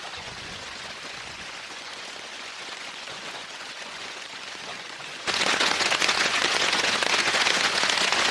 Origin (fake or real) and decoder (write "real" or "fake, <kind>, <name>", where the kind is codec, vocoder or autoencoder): fake, vocoder, Vocos